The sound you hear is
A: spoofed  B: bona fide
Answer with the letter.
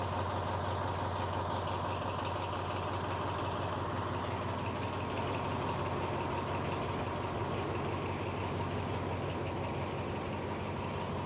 B